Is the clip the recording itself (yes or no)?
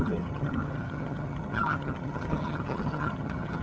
no